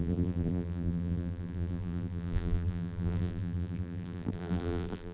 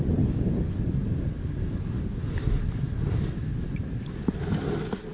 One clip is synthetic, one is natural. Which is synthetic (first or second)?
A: first